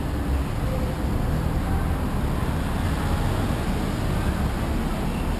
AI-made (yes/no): no